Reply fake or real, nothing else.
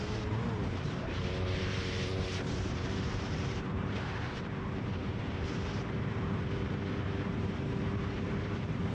fake